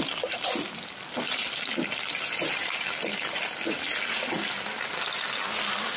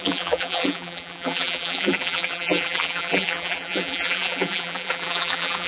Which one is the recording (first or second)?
first